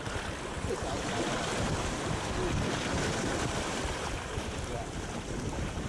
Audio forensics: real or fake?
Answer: fake